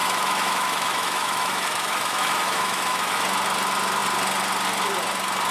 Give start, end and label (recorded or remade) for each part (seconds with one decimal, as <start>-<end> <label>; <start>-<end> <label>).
0.0-3.2 remade; 3.2-5.5 recorded